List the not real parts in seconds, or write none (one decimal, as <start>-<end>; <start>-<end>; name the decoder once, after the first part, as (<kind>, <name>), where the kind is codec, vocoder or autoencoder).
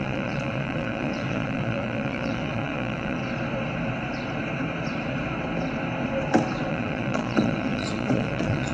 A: 0.0-3.2 (vocoder, Vocos); 6.7-8.7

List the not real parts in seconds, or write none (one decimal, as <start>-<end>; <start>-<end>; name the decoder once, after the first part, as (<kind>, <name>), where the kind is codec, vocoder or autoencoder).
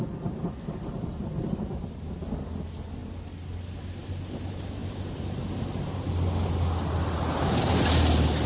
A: none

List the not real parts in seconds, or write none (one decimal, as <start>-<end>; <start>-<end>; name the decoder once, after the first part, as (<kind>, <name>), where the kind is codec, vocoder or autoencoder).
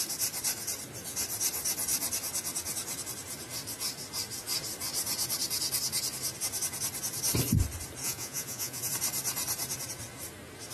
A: 8.0-8.9 (vocoder, Vocos)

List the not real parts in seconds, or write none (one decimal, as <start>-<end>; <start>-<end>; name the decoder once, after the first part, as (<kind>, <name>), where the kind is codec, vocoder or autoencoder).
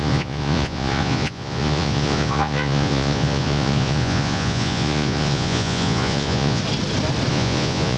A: 0.0-6.6 (vocoder, Vocos); 7.3-8.0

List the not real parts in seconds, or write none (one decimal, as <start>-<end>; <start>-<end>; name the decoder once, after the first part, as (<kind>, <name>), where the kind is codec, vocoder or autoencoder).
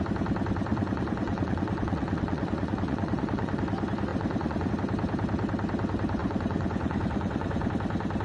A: 0.7-3.6 (vocoder, Vocos); 4.1-4.7; 6.2-7.7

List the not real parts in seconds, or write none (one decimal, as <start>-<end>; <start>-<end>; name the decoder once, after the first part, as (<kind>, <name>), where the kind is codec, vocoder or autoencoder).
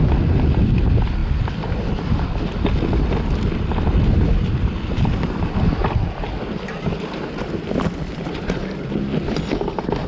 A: none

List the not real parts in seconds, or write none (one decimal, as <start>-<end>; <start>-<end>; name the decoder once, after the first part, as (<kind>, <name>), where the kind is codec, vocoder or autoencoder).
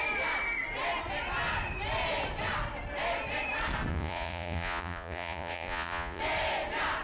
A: 3.9-6.2 (vocoder, Vocos)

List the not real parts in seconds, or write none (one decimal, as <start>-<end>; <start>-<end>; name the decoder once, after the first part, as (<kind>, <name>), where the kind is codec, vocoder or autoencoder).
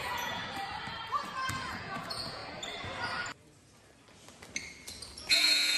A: 0.0-0.4 (vocoder, Vocos); 1.5-2.4; 5.3-5.8